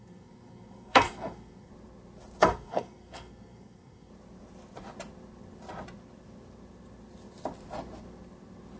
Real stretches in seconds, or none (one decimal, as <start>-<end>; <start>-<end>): 1.7-2.4; 4.1-8.8